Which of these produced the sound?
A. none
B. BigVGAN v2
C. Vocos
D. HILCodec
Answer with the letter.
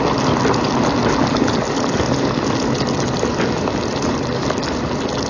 A